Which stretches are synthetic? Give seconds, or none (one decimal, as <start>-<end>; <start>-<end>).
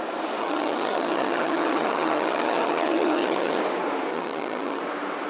0.4-3.6; 4.1-4.8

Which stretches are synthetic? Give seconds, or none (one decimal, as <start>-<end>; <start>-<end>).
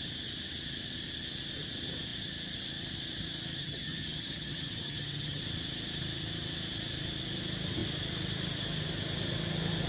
3.6-5.4